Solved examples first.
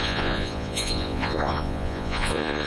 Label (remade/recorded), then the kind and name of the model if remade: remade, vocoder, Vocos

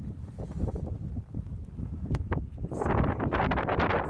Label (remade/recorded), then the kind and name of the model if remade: recorded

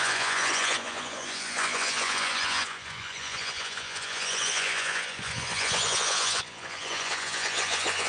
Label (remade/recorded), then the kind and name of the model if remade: remade, vocoder, Vocos